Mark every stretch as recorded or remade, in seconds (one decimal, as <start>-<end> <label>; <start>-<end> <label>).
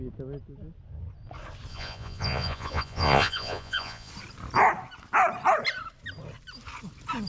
0.0-1.7 recorded; 1.7-4.1 remade; 4.1-7.3 recorded